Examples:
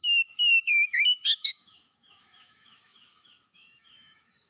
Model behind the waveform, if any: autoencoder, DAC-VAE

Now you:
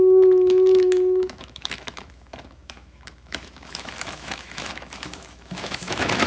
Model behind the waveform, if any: autoencoder, DAC-VAE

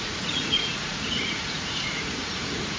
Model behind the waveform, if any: vocoder, Vocos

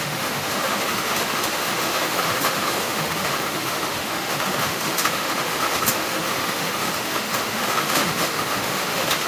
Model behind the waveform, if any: autoencoder, DAC-VAE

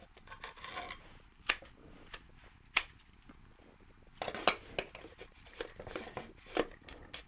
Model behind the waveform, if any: none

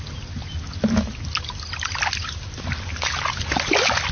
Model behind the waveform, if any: none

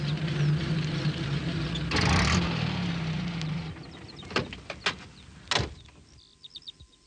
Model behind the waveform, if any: none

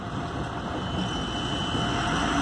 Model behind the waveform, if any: none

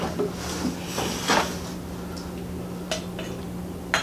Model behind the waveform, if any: none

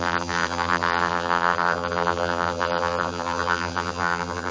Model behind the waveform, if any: vocoder, BigVGAN v2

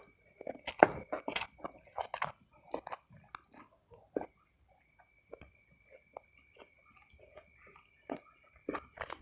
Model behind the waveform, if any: none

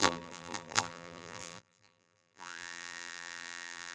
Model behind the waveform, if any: vocoder, BigVGAN v2